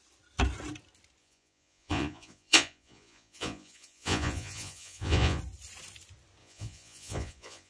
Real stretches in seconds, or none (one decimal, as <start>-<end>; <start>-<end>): 0.0-1.2; 5.4-6.4